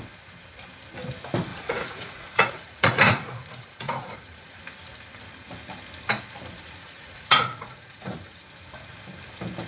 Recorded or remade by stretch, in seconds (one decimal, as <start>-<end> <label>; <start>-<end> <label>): 0.0-1.5 recorded; 1.5-4.6 remade; 4.6-6.8 recorded; 6.8-8.4 remade; 8.4-9.7 recorded